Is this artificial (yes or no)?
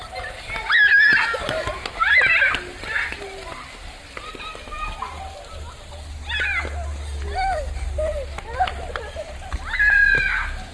no